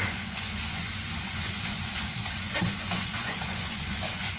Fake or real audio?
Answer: fake